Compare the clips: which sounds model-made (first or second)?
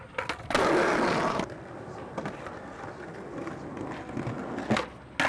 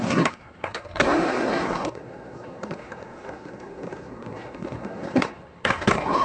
second